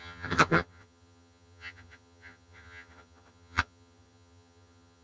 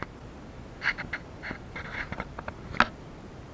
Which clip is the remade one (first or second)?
first